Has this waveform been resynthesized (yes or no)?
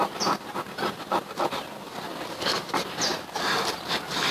yes